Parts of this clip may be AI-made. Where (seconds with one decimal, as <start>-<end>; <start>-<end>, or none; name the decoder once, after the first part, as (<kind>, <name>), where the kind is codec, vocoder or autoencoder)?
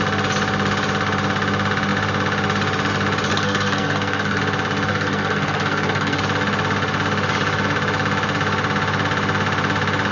3.3-4.4 (codec, SNAC); 4.9-6.2